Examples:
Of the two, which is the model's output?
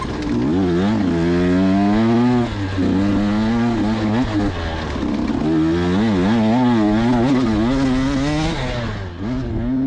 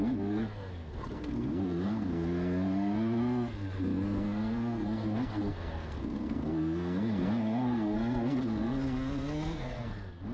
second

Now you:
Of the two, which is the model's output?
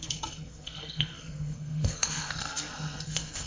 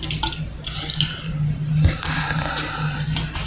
first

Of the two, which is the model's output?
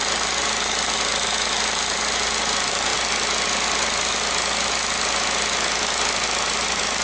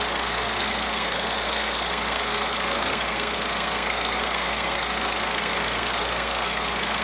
second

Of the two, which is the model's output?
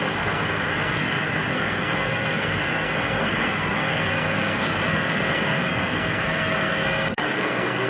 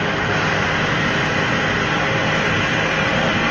first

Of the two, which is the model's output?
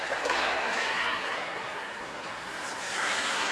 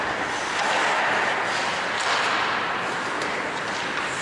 first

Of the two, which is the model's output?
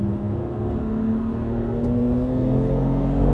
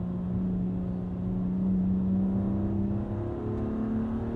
first